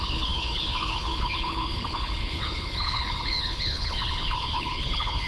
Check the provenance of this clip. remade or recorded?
remade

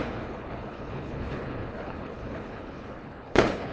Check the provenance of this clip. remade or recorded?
remade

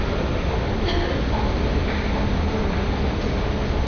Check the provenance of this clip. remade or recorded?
recorded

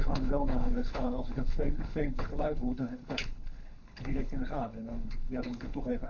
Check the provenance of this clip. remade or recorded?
remade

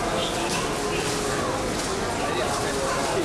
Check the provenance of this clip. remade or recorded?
recorded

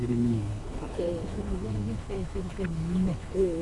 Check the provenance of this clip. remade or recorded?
remade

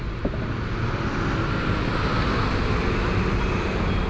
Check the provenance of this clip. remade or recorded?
recorded